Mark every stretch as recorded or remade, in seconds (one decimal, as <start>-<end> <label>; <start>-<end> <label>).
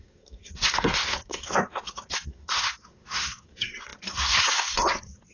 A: 0.0-5.3 remade